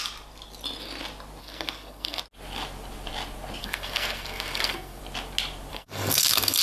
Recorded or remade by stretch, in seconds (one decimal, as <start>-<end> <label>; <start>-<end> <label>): 0.0-1.4 recorded; 1.4-2.2 remade; 2.2-3.6 recorded; 3.6-5.0 remade; 5.0-5.7 recorded; 5.7-6.6 remade